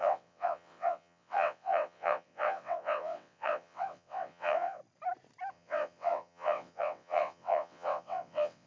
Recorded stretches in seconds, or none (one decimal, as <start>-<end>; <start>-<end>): 4.8-5.5